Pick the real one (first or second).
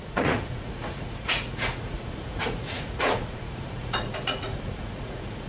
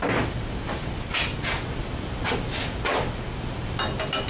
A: second